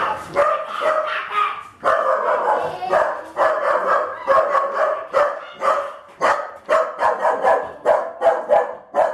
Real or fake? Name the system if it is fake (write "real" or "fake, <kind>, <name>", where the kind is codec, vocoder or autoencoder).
real